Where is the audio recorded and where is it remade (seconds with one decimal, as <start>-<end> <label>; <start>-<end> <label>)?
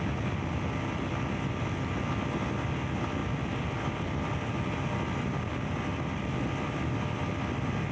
0.0-7.9 recorded